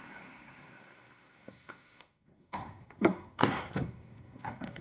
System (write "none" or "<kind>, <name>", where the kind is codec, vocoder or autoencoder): codec, SNAC